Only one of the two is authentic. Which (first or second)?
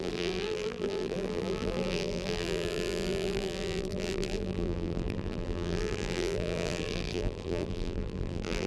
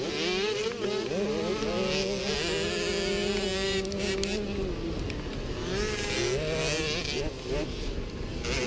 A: second